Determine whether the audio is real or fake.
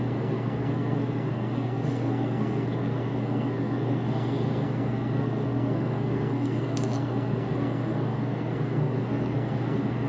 fake